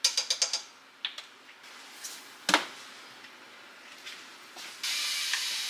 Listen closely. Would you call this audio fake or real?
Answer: real